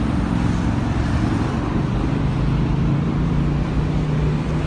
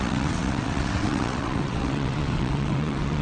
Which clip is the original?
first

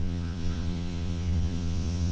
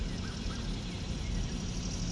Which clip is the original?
second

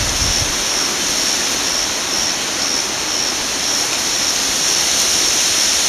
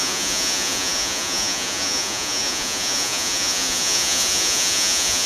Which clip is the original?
first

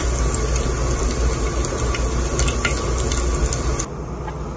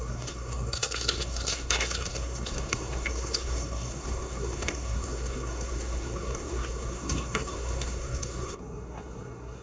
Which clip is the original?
first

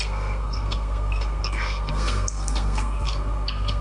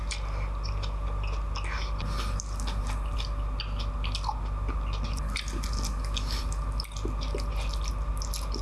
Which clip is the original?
second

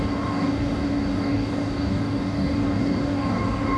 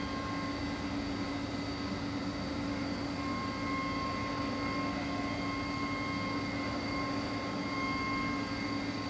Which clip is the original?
second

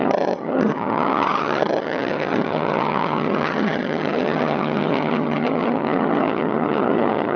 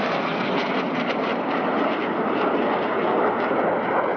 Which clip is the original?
second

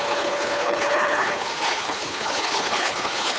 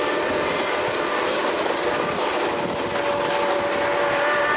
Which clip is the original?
second